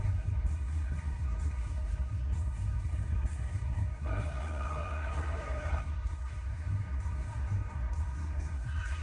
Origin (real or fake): fake